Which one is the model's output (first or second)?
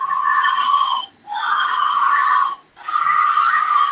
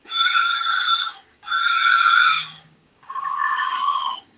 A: second